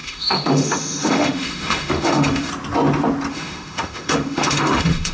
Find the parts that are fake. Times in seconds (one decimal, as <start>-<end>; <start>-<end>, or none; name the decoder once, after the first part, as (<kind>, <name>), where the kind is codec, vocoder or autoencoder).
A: 0.0-2.5 (autoencoder, DAC-VAE); 3.3-5.1